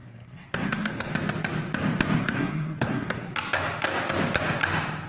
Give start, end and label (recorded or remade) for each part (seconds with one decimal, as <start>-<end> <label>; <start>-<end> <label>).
0.0-1.1 remade; 1.1-2.2 recorded; 2.2-3.3 remade; 3.3-5.1 recorded